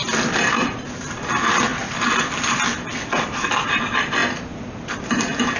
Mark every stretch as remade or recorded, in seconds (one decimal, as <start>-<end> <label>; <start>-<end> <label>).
0.0-5.6 recorded